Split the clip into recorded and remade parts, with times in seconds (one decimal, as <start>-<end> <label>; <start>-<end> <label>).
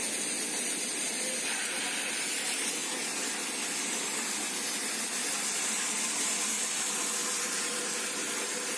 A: 0.0-8.8 recorded